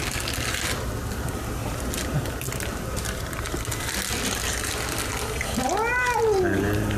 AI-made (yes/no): no